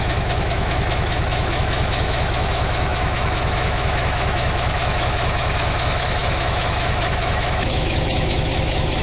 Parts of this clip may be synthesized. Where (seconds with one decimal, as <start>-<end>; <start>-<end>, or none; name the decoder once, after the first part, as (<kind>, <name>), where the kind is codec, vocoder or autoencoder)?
0.0-9.0 (autoencoder, DAC-VAE)